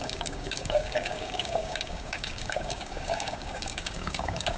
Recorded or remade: remade